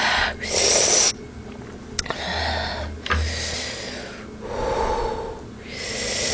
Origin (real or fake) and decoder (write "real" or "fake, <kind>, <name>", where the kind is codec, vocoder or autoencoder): real